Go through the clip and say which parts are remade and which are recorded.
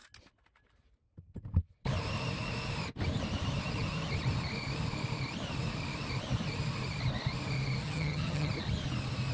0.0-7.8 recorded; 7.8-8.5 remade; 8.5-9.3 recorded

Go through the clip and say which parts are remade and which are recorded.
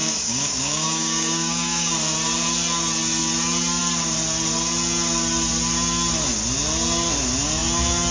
0.0-1.9 remade; 1.9-8.1 recorded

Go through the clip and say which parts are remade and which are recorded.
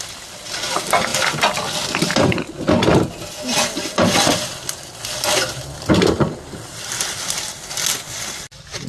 0.0-8.9 recorded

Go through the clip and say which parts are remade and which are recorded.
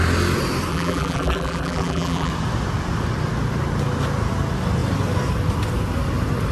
0.0-0.7 recorded; 0.7-2.3 remade; 2.3-6.5 recorded